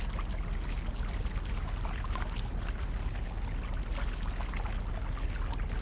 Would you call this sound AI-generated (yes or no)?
no